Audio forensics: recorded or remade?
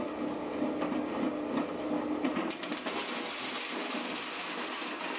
recorded